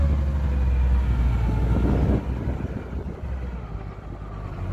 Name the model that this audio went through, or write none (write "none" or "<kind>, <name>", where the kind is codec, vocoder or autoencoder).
none